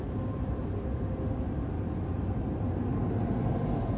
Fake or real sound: real